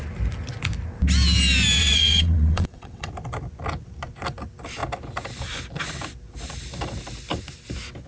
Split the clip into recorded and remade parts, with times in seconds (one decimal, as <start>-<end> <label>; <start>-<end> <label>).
0.0-1.8 recorded; 1.8-3.1 remade; 3.1-8.1 recorded